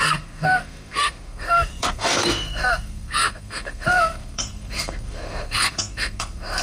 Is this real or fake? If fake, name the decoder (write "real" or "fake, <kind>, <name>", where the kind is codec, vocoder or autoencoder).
fake, codec, SNAC